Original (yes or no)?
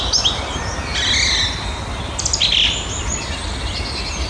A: yes